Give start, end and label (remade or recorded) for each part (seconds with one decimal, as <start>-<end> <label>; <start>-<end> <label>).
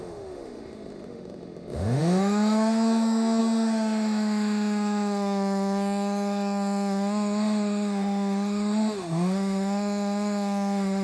0.0-11.0 remade